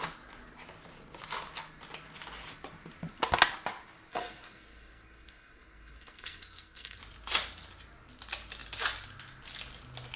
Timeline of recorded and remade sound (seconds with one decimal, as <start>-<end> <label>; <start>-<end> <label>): 0.0-4.1 recorded; 4.1-7.0 remade; 7.0-10.2 recorded